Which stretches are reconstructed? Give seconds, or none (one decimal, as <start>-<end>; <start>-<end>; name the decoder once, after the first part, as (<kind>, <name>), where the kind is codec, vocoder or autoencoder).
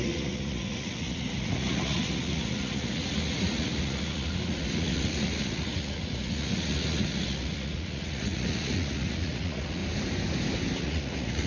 0.0-9.8 (vocoder, Vocos); 10.8-11.5